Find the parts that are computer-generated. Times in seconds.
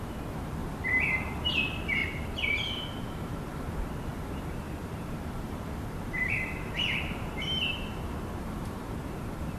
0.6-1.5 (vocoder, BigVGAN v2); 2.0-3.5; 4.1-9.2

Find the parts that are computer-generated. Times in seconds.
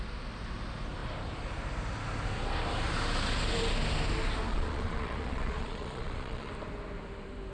4.5-6.5 (vocoder, Vocos)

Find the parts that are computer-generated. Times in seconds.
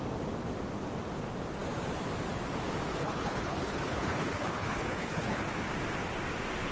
2.9-5.5 (codec, HILCodec)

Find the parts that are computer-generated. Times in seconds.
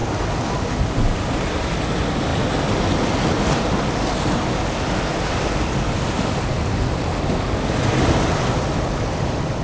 none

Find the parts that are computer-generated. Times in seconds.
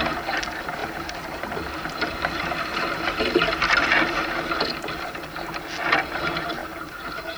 0.8-4.5 (vocoder, BigVGAN v2); 6.6-7.4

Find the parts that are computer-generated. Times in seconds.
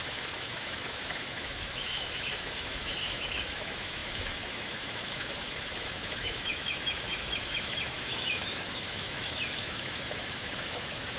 0.0-11.2 (autoencoder, DAC-VAE)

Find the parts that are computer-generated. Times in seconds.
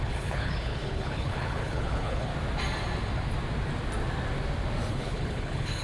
0.0-2.3 (codec, HILCodec); 4.9-5.8